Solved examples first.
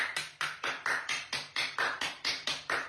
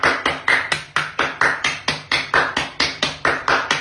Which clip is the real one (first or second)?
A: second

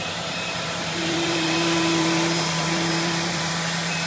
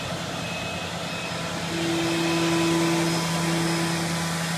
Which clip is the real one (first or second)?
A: second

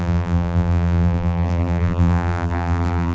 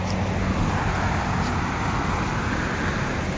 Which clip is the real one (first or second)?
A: second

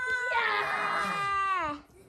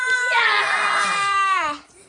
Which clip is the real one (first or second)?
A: first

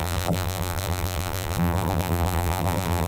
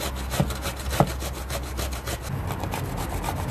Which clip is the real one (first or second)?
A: second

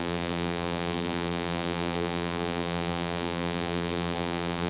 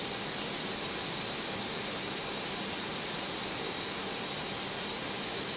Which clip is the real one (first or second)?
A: second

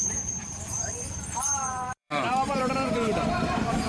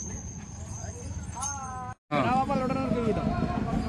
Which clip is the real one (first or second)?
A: second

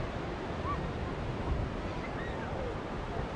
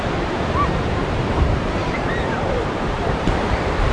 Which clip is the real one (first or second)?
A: first